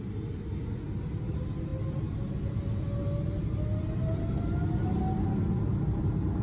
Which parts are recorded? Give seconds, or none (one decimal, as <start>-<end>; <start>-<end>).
0.0-6.4